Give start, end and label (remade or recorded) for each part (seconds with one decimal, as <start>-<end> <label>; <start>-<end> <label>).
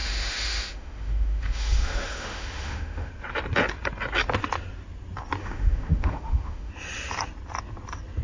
0.0-3.1 remade; 3.1-5.4 recorded; 5.4-6.7 remade; 6.7-8.2 recorded